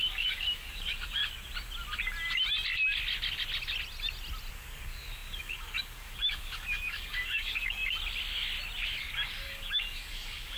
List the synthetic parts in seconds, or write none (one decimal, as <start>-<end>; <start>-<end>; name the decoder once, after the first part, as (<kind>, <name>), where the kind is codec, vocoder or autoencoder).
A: 0.0-1.2 (codec, DAC); 4.5-7.8; 9.0-10.6